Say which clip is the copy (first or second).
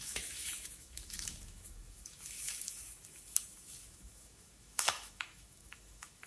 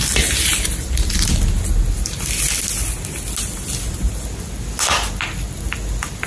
first